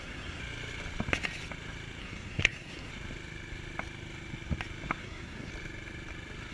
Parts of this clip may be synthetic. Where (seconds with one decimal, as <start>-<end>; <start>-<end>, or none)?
0.0-0.4; 2.0-2.9; 5.0-5.5